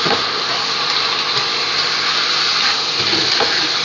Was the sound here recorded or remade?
recorded